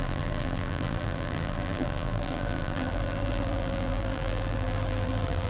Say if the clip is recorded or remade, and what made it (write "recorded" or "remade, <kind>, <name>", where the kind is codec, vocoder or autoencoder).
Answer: remade, vocoder, BigVGAN v2